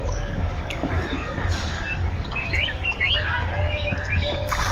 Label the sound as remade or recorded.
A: remade